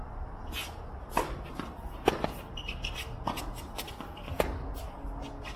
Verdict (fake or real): real